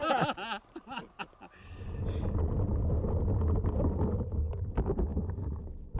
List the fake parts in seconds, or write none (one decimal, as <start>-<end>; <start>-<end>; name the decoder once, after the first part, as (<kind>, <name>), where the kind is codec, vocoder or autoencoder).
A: none